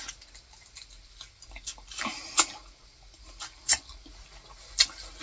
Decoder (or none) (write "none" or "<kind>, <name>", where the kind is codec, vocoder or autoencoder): none